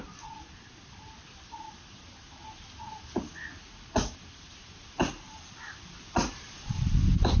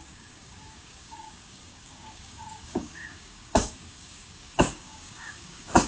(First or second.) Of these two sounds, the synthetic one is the second